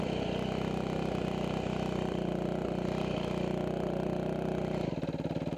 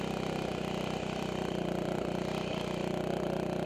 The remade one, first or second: second